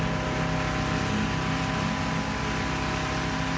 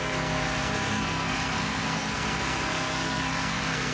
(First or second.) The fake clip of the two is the second